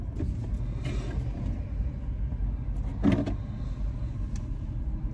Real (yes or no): yes